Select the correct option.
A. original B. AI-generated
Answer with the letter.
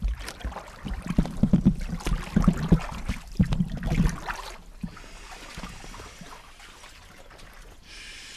A